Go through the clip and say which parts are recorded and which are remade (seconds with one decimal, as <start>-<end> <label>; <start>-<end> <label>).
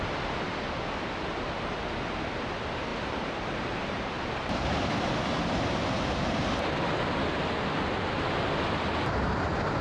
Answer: 0.0-2.9 recorded; 2.9-4.8 remade; 4.8-9.8 recorded